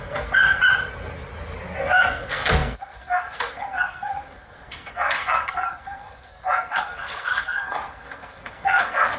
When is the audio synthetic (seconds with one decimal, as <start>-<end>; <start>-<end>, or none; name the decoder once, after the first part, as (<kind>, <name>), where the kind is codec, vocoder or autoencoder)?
0.0-0.6 (codec, SNAC); 1.8-9.2